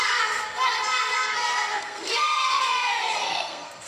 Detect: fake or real fake